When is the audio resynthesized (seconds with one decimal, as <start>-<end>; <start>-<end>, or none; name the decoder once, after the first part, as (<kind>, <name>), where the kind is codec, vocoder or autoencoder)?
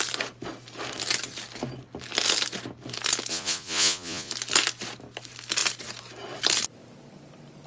3.3-4.3 (vocoder, Vocos)